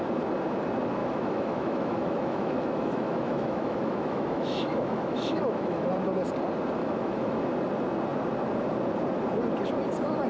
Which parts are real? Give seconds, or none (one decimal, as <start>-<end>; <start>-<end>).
0.0-1.0; 5.9-6.8; 7.4-10.3